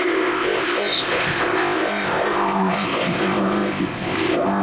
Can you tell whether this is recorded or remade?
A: remade